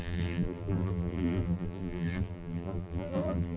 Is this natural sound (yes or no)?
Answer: no